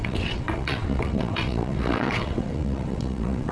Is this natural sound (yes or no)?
no